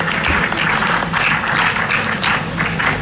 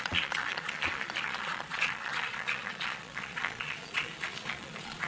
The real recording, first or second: first